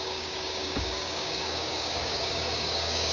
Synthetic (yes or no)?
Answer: yes